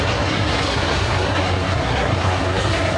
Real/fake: fake